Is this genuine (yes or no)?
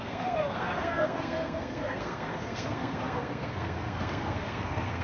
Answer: no